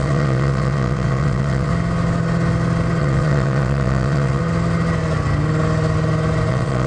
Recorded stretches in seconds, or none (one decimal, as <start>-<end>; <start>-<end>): 1.7-3.0; 4.4-6.5